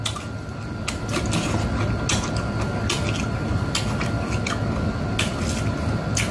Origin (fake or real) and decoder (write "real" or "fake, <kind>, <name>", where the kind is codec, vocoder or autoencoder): real